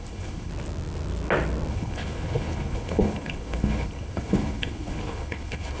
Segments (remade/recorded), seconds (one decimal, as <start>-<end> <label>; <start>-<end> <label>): 0.0-0.5 remade; 0.5-1.7 recorded; 1.7-5.8 remade